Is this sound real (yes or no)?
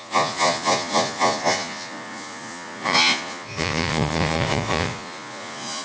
no